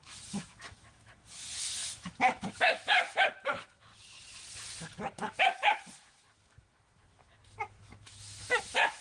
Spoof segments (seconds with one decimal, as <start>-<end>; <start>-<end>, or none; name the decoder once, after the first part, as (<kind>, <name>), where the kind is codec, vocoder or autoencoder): 0.0-3.9 (autoencoder, DAC-VAE); 5.0-9.0